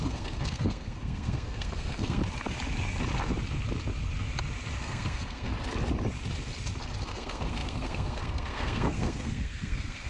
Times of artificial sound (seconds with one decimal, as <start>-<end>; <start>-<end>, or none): 0.0-2.2; 4.8-5.5; 7.0-10.1